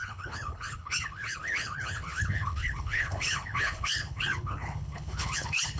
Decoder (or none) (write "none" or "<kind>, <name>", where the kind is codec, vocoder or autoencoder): codec, HILCodec